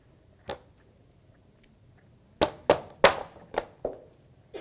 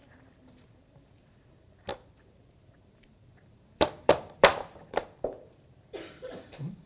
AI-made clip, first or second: second